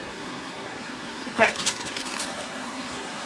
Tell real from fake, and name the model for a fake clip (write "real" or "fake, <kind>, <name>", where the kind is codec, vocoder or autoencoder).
fake, codec, SNAC